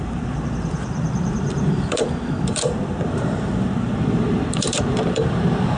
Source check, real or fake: fake